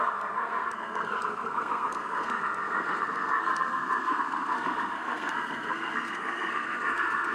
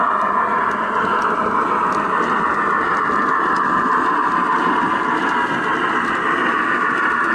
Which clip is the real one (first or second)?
second